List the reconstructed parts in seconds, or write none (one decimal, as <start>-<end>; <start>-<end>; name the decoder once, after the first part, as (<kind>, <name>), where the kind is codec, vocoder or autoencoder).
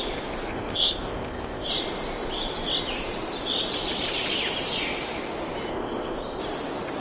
0.5-1.7 (codec, ZipCodec); 5.7-6.4